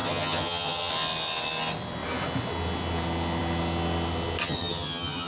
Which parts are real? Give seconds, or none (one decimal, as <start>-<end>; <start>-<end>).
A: 0.9-4.4